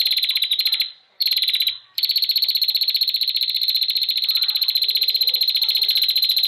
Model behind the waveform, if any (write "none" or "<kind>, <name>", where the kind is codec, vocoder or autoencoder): vocoder, BigVGAN v2